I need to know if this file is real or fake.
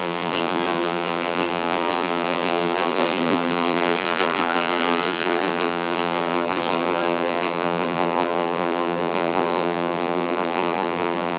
fake